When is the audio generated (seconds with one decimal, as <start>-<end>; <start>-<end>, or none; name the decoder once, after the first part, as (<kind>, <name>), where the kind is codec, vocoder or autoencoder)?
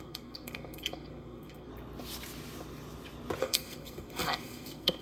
0.0-1.7 (codec, SNAC); 3.4-5.0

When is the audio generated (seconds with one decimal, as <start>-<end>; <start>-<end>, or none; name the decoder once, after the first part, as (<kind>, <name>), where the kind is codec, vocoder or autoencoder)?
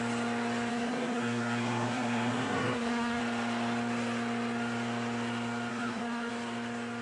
0.7-3.2 (codec, SNAC); 5.7-6.3